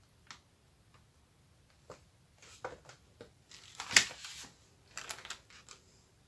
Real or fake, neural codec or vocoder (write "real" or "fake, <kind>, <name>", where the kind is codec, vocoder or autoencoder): real